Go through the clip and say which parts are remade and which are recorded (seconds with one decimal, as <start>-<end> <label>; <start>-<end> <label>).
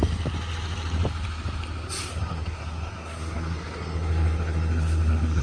0.0-2.1 recorded; 2.1-5.4 remade